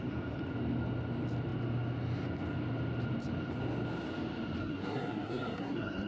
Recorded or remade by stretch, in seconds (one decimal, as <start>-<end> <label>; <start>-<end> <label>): 0.0-4.6 recorded; 4.6-6.1 remade